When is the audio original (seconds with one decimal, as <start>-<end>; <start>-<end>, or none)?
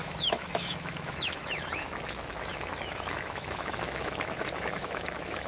none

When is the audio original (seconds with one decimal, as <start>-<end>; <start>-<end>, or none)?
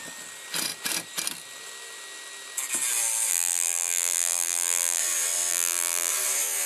0.0-3.3; 5.0-5.5; 6.1-6.7